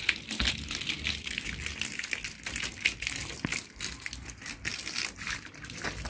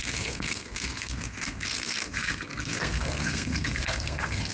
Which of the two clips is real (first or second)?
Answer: first